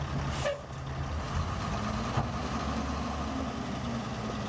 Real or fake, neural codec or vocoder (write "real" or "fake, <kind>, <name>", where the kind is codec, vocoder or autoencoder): real